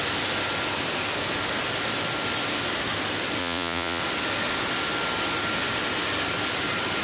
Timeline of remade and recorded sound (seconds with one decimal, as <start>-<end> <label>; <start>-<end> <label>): 0.0-3.4 recorded; 3.4-4.0 remade; 4.0-7.0 recorded